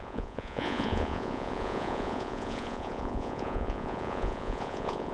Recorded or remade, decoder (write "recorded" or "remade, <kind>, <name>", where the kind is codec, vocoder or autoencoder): remade, vocoder, Vocos